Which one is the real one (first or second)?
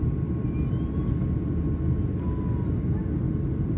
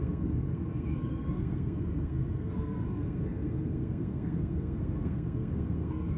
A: first